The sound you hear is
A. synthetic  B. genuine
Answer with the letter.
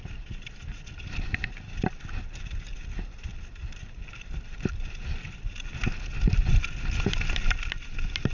B